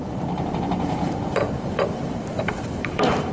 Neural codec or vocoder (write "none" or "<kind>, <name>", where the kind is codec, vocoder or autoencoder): vocoder, BigVGAN v2